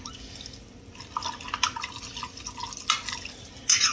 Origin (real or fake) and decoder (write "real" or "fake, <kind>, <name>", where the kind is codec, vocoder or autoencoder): real